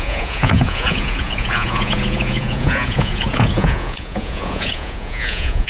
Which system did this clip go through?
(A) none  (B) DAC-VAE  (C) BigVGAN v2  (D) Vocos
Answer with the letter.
D